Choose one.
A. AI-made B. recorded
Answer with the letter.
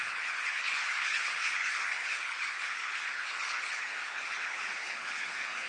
A